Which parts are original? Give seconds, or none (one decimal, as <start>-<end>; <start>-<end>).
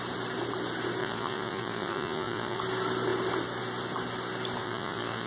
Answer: 0.0-1.0; 2.6-4.6